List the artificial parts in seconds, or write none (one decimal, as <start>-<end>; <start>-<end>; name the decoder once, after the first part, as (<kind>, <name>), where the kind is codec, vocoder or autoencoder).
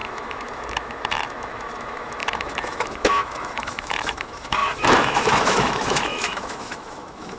0.0-7.4 (autoencoder, DAC-VAE)